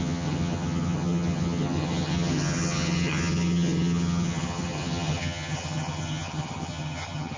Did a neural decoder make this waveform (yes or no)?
yes